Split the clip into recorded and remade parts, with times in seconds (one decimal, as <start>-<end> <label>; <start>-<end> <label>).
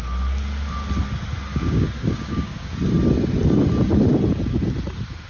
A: 0.0-1.5 recorded; 1.5-2.7 remade; 2.7-5.3 recorded